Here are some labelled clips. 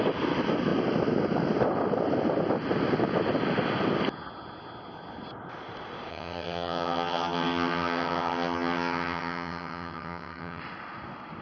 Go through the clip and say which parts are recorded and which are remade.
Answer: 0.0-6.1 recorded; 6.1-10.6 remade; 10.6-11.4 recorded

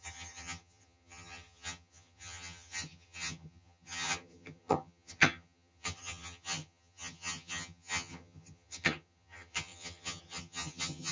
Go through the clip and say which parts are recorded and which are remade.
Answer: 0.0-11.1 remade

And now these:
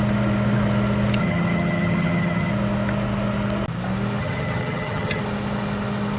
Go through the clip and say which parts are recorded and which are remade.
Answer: 0.0-1.2 recorded; 1.2-2.5 remade; 2.5-4.2 recorded; 4.2-5.2 remade; 5.2-6.2 recorded

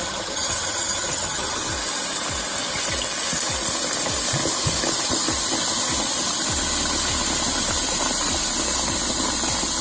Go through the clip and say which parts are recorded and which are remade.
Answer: 0.0-1.7 remade; 1.7-9.8 recorded

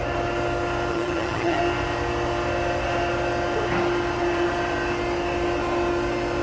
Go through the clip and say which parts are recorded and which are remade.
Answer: 0.0-0.9 recorded; 0.9-1.6 remade; 1.6-6.4 recorded